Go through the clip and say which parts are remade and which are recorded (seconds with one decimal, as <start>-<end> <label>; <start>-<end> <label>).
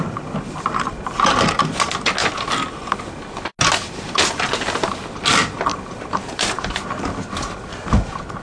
0.0-5.7 recorded; 5.7-6.7 remade; 6.7-7.7 recorded; 7.7-8.4 remade